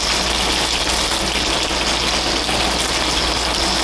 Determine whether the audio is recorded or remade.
recorded